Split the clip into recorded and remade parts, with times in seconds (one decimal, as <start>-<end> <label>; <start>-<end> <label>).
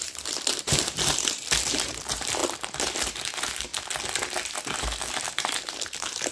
0.0-3.7 remade; 3.7-5.1 recorded; 5.1-6.3 remade